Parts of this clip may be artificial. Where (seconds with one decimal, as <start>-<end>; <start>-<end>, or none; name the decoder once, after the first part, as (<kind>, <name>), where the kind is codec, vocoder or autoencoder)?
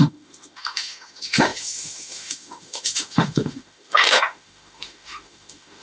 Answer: 0.0-5.8 (autoencoder, DAC-VAE)